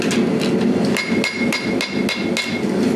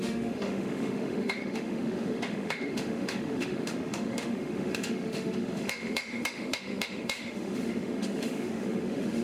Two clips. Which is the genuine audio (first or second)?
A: first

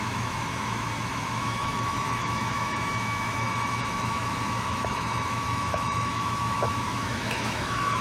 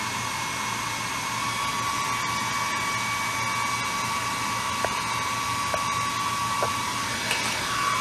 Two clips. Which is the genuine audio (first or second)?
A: second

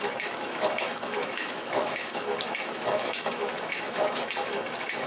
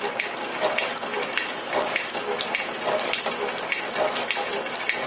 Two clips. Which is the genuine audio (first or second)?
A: second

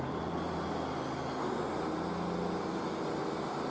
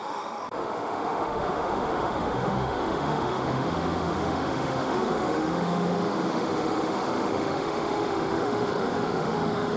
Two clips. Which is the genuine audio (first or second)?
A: first